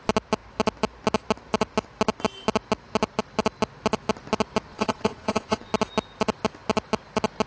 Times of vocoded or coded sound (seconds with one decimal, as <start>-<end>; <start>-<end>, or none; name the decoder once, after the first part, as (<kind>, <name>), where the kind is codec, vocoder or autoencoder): 4.7-5.7 (vocoder, Vocos)